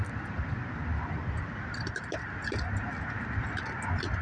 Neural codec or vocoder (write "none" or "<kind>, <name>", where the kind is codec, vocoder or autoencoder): none